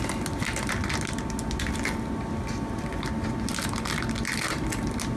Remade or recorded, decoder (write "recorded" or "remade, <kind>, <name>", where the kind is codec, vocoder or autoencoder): recorded